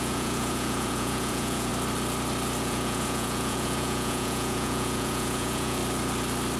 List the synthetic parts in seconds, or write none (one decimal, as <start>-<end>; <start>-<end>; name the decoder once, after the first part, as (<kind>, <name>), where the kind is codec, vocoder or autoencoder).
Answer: 0.0-1.7 (vocoder, Vocos); 2.6-5.8